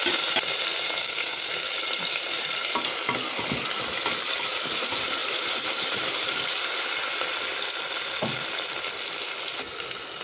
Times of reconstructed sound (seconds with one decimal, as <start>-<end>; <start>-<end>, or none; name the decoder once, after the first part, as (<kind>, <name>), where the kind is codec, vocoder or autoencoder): 1.0-1.5 (codec, SNAC)